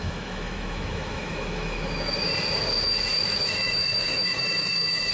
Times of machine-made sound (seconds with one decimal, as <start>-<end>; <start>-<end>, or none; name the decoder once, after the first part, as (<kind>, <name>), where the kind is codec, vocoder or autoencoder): 0.0-2.2 (autoencoder, DAC-VAE); 3.1-5.1